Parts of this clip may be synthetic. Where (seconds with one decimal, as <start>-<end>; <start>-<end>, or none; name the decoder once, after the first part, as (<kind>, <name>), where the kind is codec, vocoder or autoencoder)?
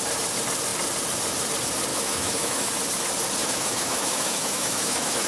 1.9-2.7 (autoencoder, DAC-VAE); 3.4-5.3